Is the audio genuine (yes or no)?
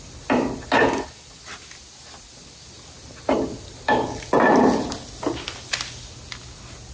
yes